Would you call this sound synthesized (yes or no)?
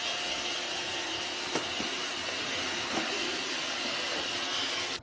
no